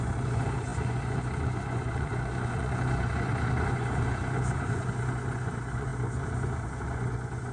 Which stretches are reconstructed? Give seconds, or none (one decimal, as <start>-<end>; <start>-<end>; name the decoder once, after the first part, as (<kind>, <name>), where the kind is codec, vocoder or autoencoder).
0.0-7.5 (vocoder, Vocos)

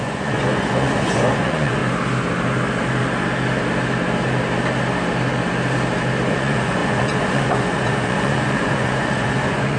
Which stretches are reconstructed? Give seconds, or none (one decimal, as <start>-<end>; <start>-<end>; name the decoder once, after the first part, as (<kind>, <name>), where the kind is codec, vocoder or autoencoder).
0.0-1.8 (vocoder, Vocos); 6.3-9.8

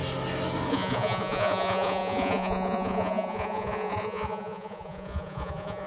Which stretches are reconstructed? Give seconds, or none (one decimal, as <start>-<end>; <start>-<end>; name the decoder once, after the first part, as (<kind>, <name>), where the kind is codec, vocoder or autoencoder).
0.7-5.9 (vocoder, Vocos)